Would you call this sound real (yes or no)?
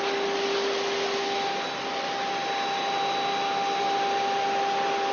yes